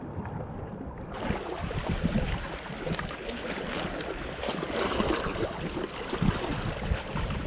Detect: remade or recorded recorded